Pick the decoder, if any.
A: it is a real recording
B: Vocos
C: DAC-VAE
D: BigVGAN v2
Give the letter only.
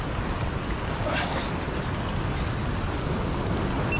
A